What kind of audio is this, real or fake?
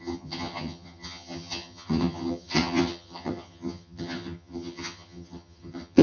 fake